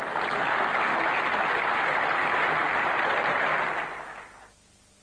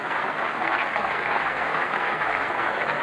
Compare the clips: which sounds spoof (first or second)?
second